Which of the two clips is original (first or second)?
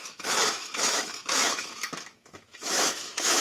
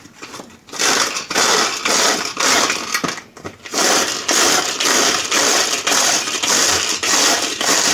second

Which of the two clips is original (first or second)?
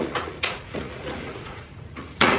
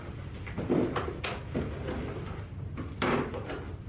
second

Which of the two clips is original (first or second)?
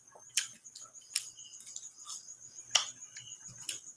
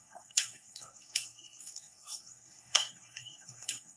first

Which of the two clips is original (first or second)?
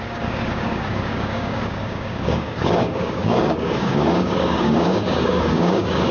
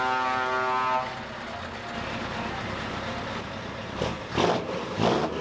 second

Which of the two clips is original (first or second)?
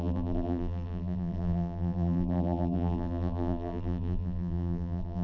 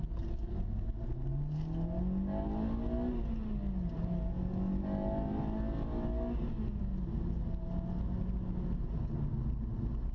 second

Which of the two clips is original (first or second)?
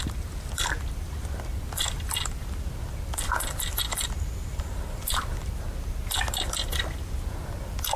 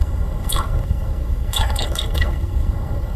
first